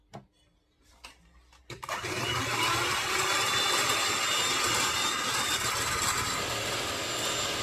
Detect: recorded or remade recorded